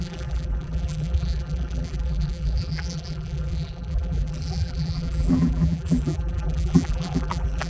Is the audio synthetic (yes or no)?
yes